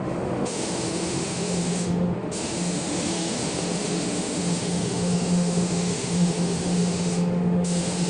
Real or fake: fake